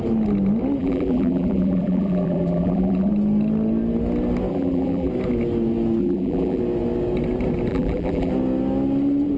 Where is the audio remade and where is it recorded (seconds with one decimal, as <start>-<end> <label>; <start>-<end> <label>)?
0.0-0.8 recorded; 0.8-3.1 remade; 3.1-4.5 recorded; 4.5-5.1 remade; 5.1-6.0 recorded; 6.0-6.6 remade; 6.6-7.7 recorded; 7.7-8.3 remade; 8.3-9.4 recorded